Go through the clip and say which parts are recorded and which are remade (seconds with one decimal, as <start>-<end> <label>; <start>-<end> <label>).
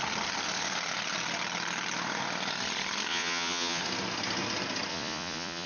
0.0-3.1 recorded; 3.1-3.8 remade; 3.8-4.9 recorded; 4.9-5.7 remade